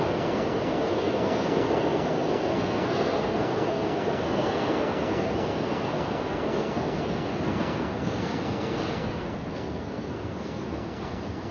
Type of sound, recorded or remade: remade